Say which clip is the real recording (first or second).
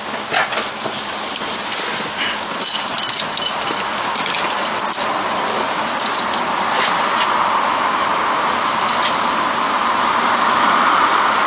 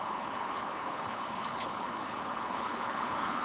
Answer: first